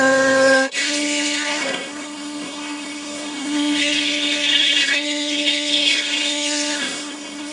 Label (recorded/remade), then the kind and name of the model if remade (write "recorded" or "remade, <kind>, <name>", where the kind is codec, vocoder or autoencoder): remade, codec, SNAC